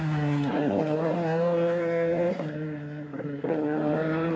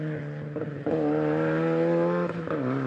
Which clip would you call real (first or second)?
second